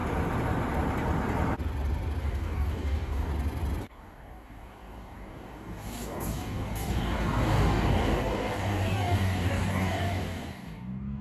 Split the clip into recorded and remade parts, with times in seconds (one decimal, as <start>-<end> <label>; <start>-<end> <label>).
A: 0.0-2.2 recorded; 2.2-3.3 remade; 3.3-3.8 recorded; 3.8-11.2 remade